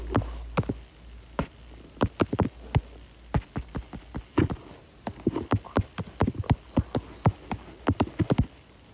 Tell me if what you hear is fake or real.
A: real